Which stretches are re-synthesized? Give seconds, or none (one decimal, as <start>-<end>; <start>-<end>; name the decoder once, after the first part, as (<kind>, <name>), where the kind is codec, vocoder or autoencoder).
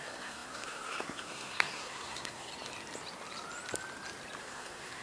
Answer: 0.0-2.5 (codec, SNAC); 4.4-5.0